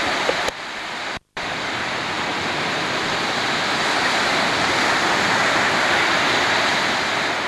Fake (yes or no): yes